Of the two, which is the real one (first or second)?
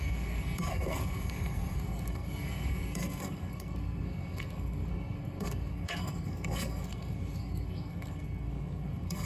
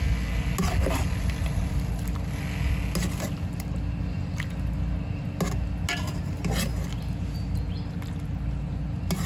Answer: second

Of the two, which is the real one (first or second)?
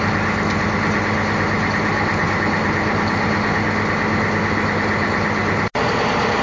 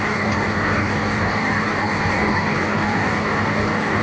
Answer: first